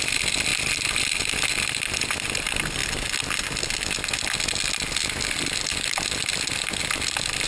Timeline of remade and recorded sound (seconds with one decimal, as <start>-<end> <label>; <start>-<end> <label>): 0.0-7.5 recorded